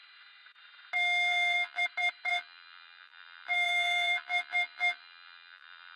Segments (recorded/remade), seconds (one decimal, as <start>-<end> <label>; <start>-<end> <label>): 0.0-1.3 recorded; 1.3-1.8 remade; 1.8-2.3 recorded; 2.3-6.0 remade